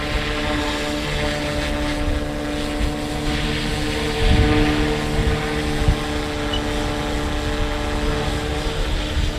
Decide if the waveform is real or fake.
real